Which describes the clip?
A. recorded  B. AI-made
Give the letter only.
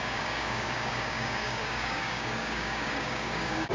B